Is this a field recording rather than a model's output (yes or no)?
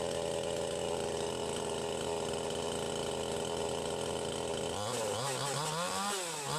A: yes